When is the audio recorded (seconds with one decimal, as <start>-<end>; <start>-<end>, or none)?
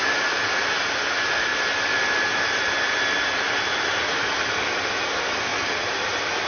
0.0-1.5; 4.9-6.5